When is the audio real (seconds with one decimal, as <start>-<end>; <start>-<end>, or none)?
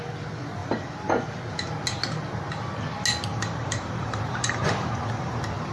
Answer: 0.0-0.6; 1.4-3.3